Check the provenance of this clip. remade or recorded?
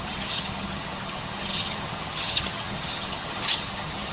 remade